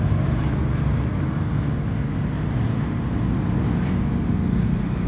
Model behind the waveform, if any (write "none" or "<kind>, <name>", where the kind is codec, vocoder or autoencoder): none